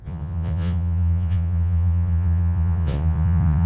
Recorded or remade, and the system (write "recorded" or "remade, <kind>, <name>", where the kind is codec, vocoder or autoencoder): remade, vocoder, Vocos